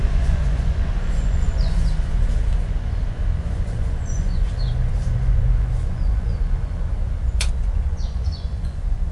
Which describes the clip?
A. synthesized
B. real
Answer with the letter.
A